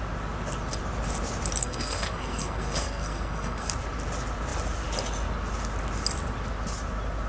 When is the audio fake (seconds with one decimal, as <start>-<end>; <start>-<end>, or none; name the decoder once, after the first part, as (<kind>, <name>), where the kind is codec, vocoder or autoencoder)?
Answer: 1.6-3.7 (codec, SNAC)